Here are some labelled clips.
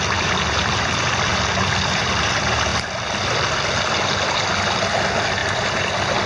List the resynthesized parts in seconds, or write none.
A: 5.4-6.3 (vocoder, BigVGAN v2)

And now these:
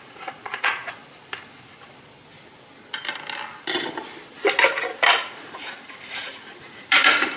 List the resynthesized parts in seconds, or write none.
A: 0.0-1.0 (vocoder, Vocos); 5.2-7.4

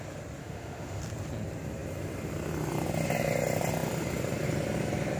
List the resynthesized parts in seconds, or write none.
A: 0.4-1.0 (autoencoder, DAC-VAE)

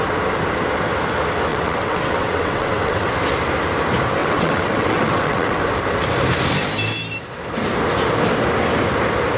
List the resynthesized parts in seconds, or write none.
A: 1.5-3.1 (vocoder, WaveNeXt); 4.2-5.6

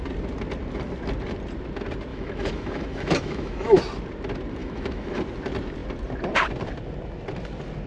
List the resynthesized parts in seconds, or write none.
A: 2.1-3.8 (autoencoder, DAC-VAE); 4.6-5.2

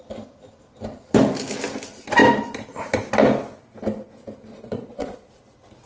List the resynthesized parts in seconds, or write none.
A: 4.5-5.3 (vocoder, Vocos)

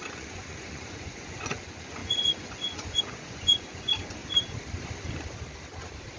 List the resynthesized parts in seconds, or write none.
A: 0.0-4.2 (vocoder, Vocos)